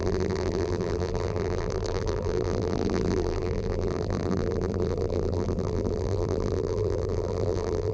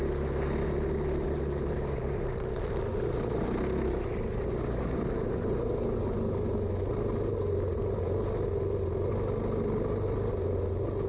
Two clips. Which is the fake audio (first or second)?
first